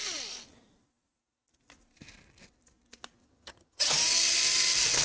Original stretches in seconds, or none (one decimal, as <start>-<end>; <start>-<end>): 0.0-3.2; 3.9-5.0